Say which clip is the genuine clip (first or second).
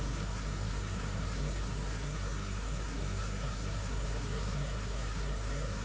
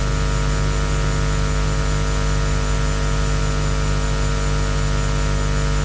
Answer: second